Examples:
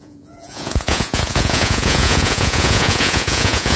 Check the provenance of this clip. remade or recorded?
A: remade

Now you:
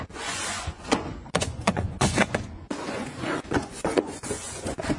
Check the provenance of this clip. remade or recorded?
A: remade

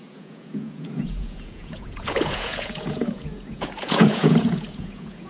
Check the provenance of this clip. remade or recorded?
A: remade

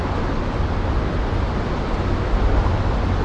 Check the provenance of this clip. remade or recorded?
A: recorded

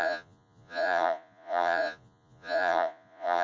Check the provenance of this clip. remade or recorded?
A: remade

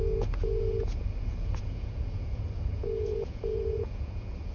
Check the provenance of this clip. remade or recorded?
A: remade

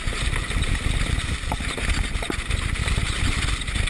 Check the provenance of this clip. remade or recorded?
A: recorded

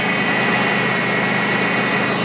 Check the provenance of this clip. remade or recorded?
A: recorded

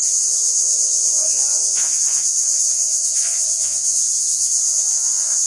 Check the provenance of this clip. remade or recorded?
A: remade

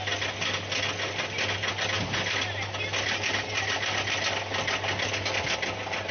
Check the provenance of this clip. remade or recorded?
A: recorded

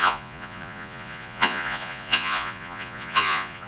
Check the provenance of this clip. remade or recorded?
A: remade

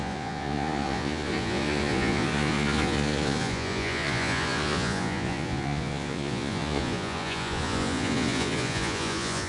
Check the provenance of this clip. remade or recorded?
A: remade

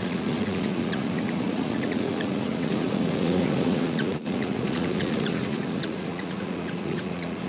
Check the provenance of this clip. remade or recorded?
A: remade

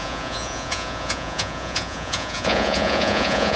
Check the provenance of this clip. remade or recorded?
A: remade